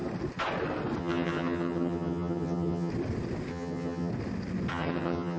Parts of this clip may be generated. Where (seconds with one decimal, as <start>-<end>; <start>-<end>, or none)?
1.0-2.9; 3.5-4.1; 4.7-5.4